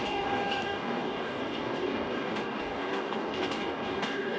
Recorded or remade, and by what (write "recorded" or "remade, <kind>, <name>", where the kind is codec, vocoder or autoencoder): remade, codec, DAC